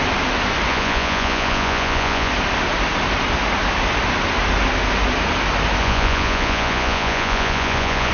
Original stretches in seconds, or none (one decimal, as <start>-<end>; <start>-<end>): 0.0-0.7; 2.3-5.8